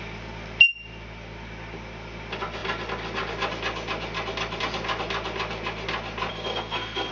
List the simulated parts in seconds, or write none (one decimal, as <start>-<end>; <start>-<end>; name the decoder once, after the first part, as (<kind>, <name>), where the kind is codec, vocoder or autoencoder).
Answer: 6.3-7.1 (codec, SNAC)